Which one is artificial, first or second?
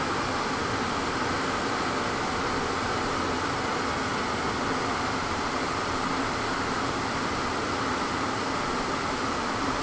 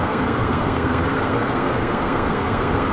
second